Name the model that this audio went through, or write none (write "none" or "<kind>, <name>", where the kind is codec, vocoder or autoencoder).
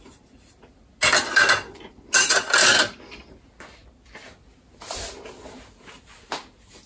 none